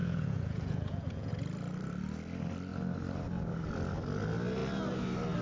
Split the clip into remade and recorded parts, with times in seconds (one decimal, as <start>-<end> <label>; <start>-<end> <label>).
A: 0.0-1.3 remade; 1.3-5.4 recorded